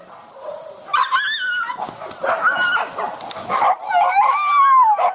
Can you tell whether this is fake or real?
real